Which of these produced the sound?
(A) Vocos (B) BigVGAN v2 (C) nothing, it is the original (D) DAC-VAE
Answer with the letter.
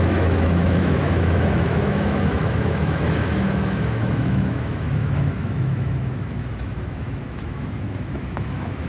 D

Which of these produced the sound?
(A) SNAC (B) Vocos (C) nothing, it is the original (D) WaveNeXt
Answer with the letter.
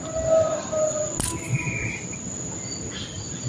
C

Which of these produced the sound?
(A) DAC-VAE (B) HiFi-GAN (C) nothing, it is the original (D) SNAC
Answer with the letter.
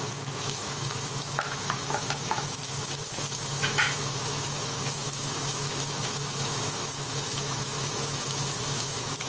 A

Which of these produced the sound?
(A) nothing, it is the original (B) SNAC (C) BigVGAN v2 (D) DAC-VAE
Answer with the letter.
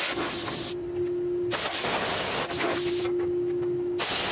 A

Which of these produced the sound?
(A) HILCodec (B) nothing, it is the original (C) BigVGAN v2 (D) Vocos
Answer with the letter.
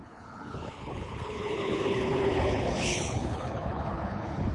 A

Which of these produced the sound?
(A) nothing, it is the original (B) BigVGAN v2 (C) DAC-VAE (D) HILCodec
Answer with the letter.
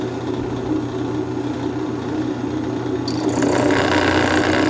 A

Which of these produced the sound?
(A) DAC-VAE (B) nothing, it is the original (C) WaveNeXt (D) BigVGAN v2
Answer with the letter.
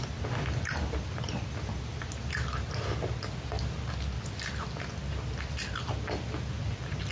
B